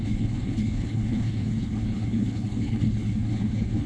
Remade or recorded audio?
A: remade